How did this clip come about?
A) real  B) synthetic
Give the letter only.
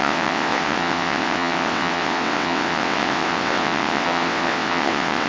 B